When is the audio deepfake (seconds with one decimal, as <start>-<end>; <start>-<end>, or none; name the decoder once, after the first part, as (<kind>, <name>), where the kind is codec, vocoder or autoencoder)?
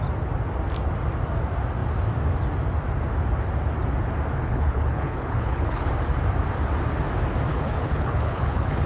4.4-5.9 (codec, HILCodec); 7.5-8.9